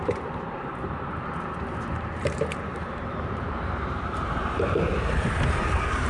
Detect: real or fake fake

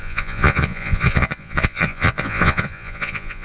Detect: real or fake fake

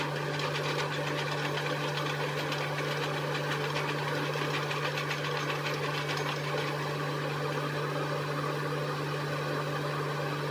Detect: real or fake real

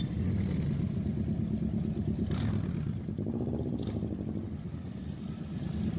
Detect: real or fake real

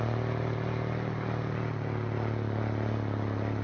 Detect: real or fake real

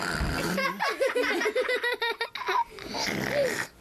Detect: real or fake real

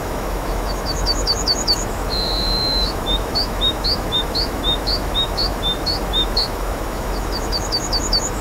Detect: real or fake fake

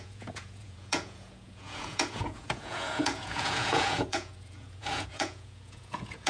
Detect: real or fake fake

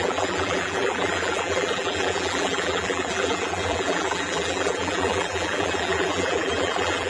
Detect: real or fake fake